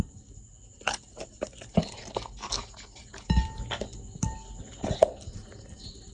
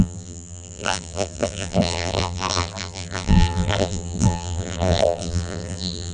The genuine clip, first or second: first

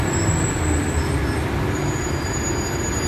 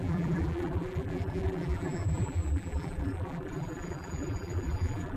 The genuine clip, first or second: first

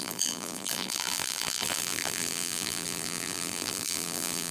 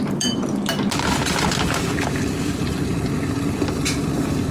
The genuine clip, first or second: second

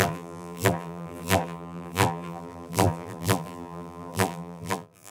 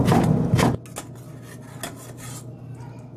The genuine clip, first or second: second